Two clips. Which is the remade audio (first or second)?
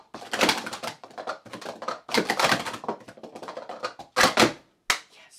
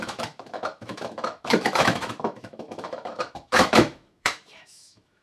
second